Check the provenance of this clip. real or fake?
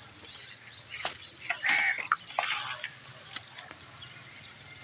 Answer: real